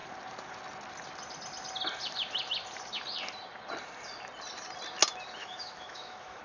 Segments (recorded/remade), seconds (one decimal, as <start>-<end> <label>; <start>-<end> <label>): 0.0-5.4 recorded; 5.4-6.4 remade